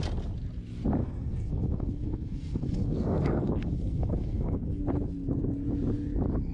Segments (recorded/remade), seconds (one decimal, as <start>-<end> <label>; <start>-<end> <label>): 0.0-1.0 recorded; 1.0-4.8 remade; 4.8-6.5 recorded